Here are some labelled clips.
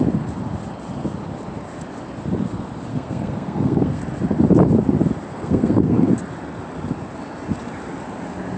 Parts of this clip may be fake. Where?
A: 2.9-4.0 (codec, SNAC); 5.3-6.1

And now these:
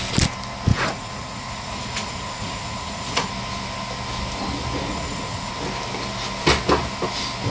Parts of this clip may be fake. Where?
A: 0.7-3.3 (vocoder, Vocos); 4.9-5.5

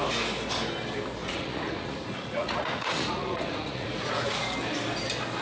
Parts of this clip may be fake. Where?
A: 1.2-4.3 (vocoder, Vocos)

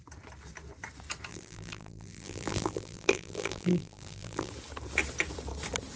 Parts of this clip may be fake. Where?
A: 1.3-4.5 (vocoder, BigVGAN v2)

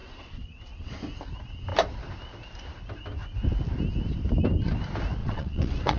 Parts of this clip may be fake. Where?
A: 0.0-0.9 (vocoder, WaveNeXt); 5.2-6.0

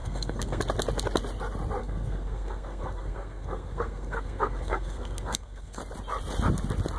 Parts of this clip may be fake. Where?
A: 0.0-0.6 (codec, SNAC); 1.8-5.8

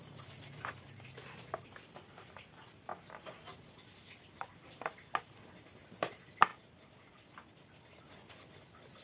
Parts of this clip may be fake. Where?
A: none